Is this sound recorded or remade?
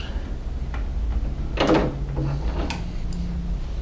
recorded